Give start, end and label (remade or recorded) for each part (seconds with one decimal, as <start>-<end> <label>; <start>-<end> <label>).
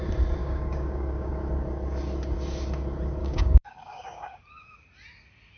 0.0-0.4 recorded; 0.4-1.3 remade; 1.3-3.2 recorded; 3.2-4.4 remade; 4.4-5.6 recorded